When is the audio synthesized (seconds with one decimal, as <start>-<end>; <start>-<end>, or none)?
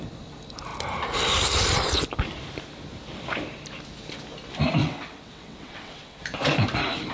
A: 4.8-6.2